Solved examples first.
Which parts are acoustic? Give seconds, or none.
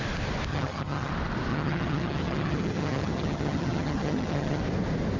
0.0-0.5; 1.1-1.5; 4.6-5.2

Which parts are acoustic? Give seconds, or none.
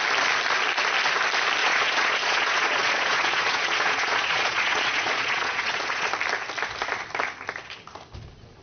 0.0-1.6; 6.1-8.6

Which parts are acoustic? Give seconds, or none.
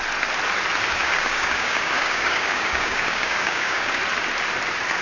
0.0-1.0; 4.0-5.0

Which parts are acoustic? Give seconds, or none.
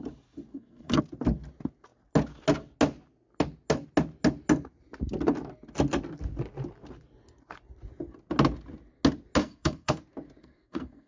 0.0-0.5; 1.0-9.4; 10.0-10.4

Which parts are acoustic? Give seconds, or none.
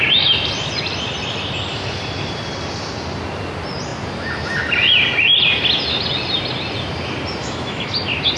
0.0-7.4; 7.9-8.4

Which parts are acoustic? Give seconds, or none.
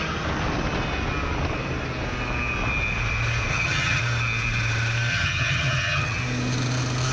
0.0-3.5; 4.0-5.1; 6.2-7.1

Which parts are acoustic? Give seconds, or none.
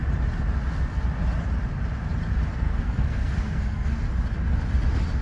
0.0-2.5; 4.0-5.2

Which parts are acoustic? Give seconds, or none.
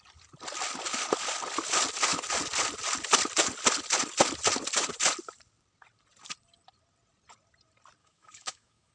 0.0-8.0